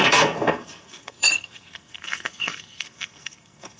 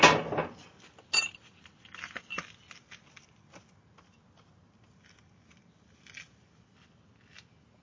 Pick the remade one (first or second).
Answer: first